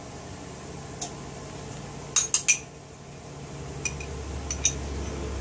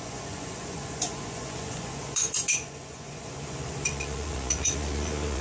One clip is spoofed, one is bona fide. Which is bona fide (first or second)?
first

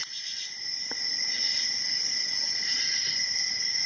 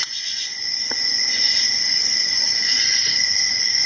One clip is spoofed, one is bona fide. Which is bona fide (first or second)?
first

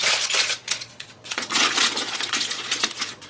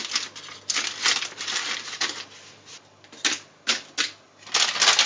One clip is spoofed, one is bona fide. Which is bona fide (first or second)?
second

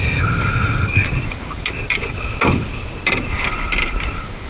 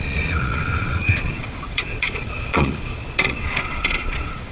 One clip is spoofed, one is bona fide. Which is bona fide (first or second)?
first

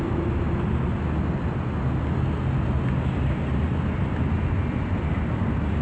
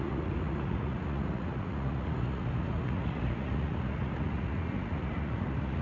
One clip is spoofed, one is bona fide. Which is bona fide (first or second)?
first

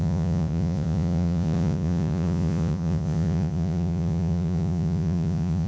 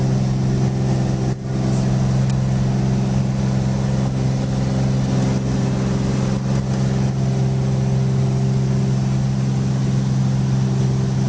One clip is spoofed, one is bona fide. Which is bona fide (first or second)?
second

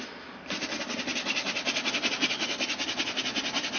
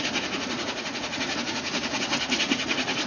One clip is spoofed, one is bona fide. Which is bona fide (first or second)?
first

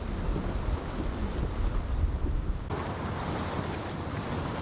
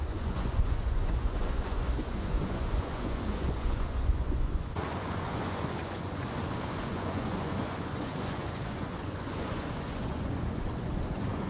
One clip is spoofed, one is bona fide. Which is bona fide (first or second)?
first